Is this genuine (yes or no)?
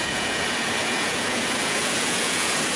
no